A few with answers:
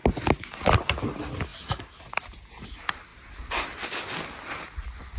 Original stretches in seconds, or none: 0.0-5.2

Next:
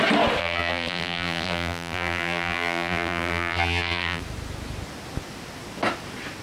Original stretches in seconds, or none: 0.0-0.4; 4.2-6.4

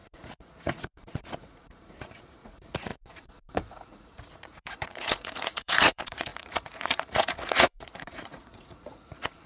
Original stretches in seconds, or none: none

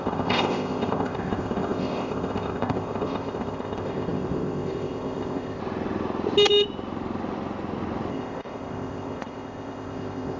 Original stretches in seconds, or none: 5.6-8.1

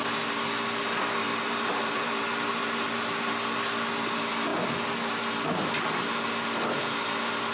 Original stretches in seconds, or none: 0.0-1.2; 3.3-7.5

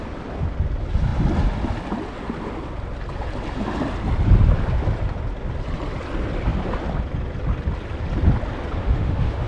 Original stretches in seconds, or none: 0.0-8.8

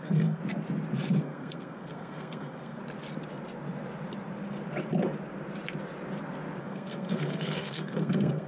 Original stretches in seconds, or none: 0.4-1.2; 2.8-6.6

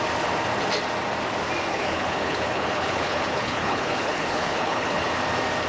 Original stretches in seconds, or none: 0.0-1.7; 5.1-5.7